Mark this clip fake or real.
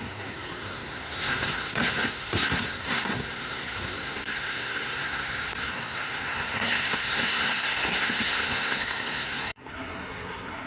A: fake